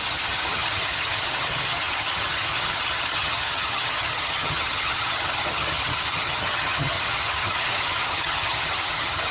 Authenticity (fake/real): fake